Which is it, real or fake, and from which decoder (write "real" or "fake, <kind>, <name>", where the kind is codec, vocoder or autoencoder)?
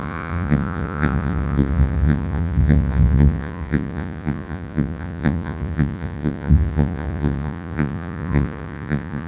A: fake, vocoder, Vocos